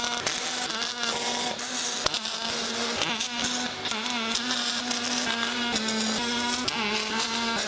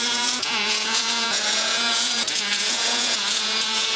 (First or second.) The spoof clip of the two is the second